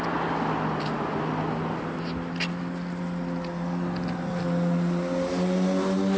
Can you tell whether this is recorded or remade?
recorded